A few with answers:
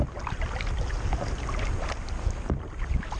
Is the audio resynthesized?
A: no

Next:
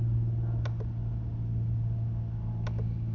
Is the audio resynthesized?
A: no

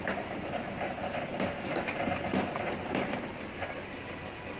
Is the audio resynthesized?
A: no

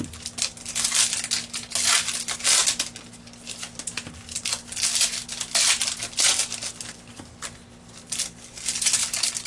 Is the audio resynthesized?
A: no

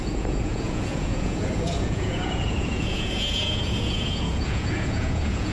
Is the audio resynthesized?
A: yes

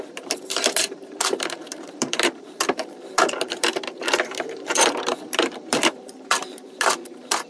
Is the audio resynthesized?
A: yes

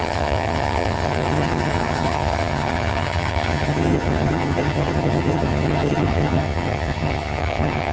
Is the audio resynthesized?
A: yes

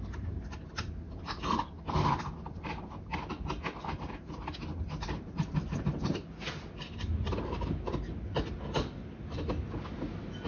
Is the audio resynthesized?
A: no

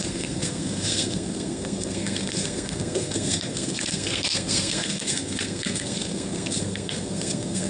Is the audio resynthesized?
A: yes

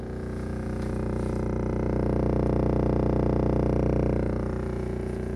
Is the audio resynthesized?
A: yes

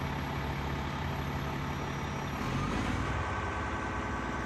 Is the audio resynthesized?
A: no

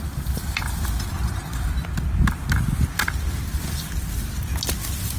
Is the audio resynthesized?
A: no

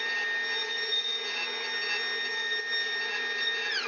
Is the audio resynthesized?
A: no